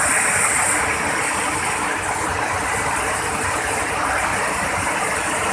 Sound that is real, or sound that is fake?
real